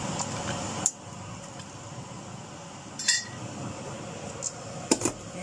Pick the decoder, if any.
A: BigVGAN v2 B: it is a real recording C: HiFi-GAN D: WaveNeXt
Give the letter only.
B